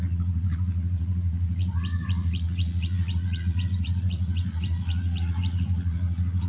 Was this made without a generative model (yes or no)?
no